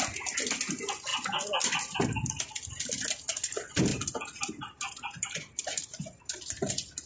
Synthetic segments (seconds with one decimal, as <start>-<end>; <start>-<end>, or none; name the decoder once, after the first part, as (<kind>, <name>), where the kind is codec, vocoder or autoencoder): 3.9-7.1 (vocoder, BigVGAN v2)